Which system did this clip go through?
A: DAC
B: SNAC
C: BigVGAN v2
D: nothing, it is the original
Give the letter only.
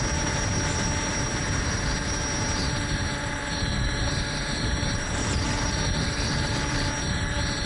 C